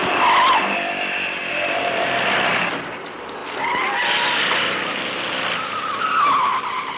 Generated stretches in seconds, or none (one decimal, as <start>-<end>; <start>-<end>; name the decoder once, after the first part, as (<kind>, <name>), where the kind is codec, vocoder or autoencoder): none